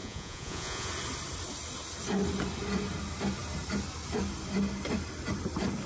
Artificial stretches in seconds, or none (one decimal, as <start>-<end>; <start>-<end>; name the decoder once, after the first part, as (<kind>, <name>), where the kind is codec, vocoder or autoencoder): 0.0-0.9 (vocoder, Vocos)

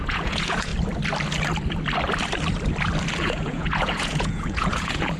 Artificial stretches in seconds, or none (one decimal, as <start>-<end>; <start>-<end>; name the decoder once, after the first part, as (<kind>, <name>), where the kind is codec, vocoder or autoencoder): 0.0-0.7 (vocoder, Vocos); 3.2-5.2

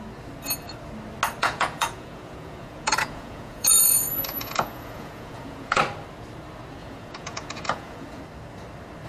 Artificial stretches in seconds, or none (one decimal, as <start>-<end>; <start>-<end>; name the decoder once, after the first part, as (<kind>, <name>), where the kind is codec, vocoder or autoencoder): 1.4-5.8 (vocoder, Vocos); 6.8-8.2

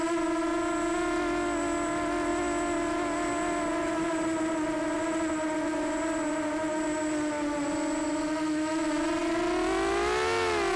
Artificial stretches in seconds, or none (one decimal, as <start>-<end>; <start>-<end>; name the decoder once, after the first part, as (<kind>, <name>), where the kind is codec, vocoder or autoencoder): none

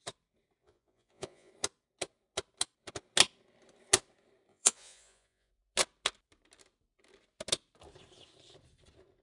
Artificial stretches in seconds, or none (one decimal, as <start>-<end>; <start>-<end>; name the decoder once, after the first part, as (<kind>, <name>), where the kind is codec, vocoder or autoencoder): 0.6-1.5 (vocoder, Vocos); 4.5-5.5

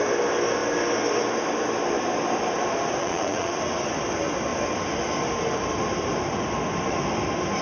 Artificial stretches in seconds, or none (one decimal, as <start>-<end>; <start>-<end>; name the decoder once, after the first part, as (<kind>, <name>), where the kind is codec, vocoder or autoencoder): 3.0-3.5 (vocoder, Vocos)

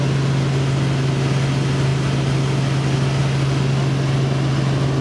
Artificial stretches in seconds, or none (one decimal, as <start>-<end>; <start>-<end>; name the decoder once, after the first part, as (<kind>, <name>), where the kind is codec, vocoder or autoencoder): none

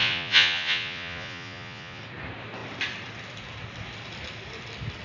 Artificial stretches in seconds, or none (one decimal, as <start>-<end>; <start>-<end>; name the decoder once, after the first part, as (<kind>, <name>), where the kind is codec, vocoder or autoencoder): 0.0-2.0 (vocoder, Vocos)